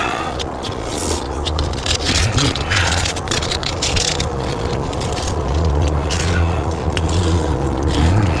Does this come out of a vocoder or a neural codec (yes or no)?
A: yes